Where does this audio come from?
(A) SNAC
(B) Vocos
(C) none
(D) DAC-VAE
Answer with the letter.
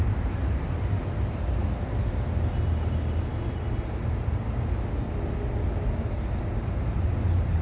C